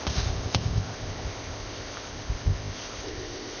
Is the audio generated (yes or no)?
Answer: yes